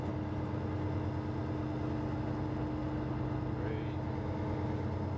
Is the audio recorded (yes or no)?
yes